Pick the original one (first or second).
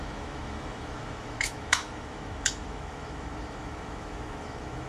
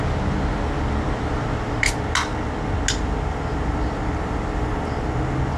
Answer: second